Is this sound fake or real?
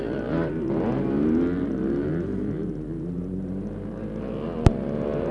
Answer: real